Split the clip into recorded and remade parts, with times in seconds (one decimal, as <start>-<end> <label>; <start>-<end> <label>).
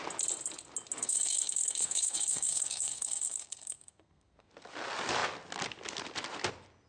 0.0-1.0 recorded; 1.0-4.5 remade; 4.5-6.9 recorded